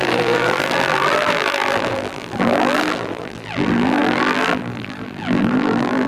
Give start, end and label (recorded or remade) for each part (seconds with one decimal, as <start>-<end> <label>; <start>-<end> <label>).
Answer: 0.0-6.1 remade